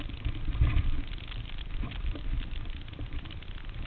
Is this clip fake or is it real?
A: real